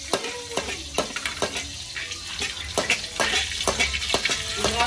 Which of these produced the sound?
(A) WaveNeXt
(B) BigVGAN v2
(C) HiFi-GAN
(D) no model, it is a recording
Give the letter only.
D